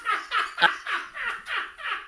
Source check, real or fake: fake